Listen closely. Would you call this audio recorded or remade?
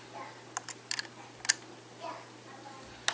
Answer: recorded